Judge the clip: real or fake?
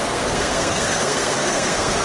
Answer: fake